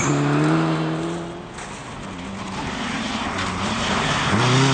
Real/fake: real